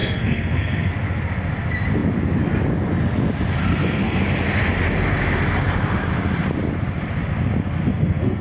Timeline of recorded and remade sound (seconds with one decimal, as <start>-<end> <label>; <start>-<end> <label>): 0.0-0.9 remade; 0.9-3.6 recorded; 3.6-4.2 remade; 4.2-7.9 recorded; 7.9-8.4 remade

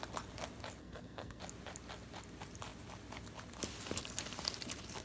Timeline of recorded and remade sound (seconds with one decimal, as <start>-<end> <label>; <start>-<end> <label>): 0.0-0.8 recorded; 0.8-1.4 remade; 1.4-5.0 recorded

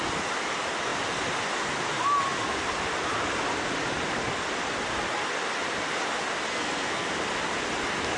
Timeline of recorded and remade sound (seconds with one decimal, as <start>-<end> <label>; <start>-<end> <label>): 0.0-6.5 recorded; 6.5-7.1 remade; 7.1-8.2 recorded

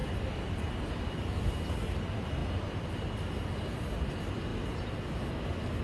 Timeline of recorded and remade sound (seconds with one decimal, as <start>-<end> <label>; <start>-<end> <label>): 0.0-5.8 recorded

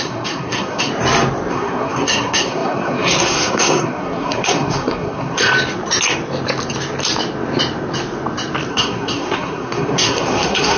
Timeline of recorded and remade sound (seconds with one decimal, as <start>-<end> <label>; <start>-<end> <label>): 0.0-0.9 remade; 0.9-1.5 recorded; 1.5-5.5 remade; 5.5-8.7 recorded; 8.7-10.8 remade